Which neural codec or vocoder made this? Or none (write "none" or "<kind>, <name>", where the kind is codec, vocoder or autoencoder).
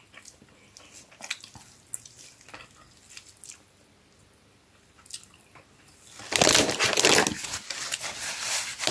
none